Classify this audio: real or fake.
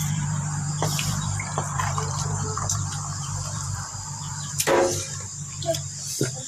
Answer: fake